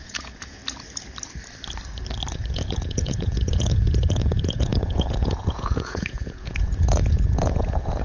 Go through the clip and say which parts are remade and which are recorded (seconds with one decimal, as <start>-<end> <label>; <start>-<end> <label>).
0.0-0.6 remade; 0.6-2.3 recorded; 2.3-8.0 remade